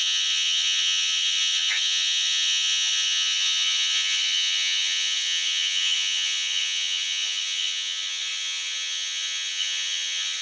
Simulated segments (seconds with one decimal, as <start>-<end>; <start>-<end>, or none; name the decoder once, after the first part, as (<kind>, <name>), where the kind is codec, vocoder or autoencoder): 0.0-10.4 (vocoder, HiFi-GAN)